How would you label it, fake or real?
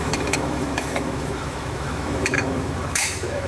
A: fake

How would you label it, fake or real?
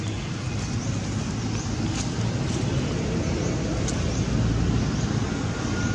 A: real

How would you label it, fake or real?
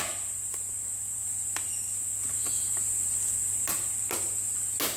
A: real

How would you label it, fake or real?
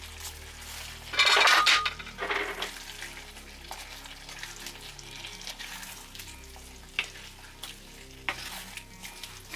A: real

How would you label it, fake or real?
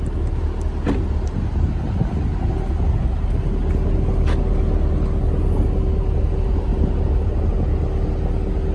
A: real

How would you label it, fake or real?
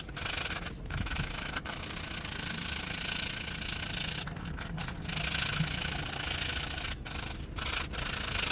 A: real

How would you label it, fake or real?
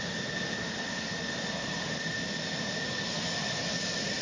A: real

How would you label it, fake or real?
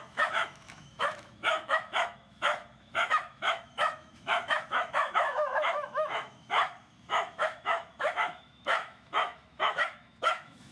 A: fake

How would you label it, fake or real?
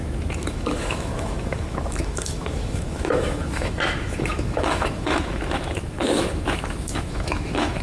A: fake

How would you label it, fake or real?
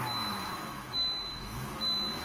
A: fake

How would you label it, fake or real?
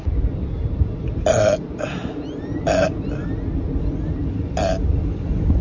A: real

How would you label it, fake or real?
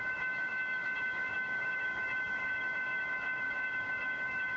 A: fake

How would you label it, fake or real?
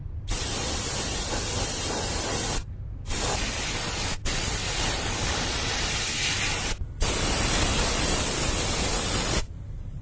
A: real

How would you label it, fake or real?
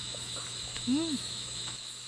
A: fake